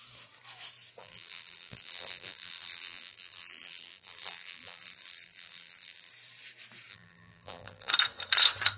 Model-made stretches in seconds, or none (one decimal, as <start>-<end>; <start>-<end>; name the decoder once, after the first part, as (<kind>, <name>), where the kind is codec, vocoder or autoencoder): 1.0-6.1 (vocoder, BigVGAN v2); 6.9-7.9